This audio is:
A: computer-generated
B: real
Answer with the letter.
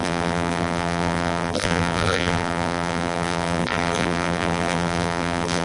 A